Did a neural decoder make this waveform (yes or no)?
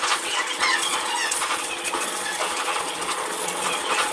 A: yes